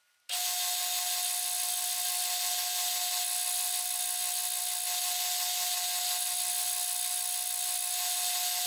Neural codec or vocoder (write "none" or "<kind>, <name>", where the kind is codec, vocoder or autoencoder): none